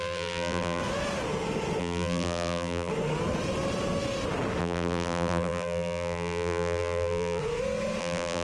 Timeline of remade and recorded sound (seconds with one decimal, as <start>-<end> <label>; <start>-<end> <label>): 0.0-0.8 remade; 0.8-1.8 recorded; 1.8-2.9 remade; 2.9-4.6 recorded; 4.6-7.4 remade; 7.4-8.0 recorded; 8.0-8.4 remade